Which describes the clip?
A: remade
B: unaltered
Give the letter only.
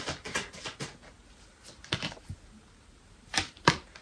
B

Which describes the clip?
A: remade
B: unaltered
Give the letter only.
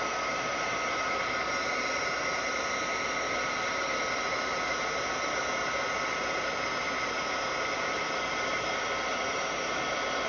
A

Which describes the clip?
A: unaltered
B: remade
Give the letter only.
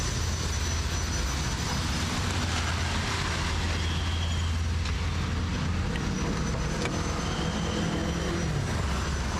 A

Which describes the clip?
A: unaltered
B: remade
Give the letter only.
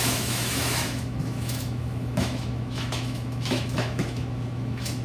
B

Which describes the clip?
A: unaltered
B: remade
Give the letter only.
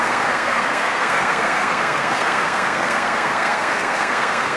B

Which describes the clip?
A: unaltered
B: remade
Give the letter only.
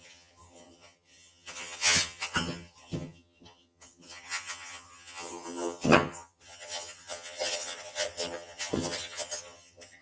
B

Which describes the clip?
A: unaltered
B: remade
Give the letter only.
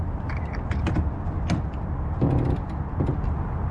A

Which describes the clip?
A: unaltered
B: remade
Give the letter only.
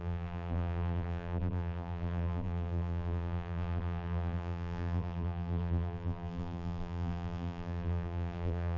B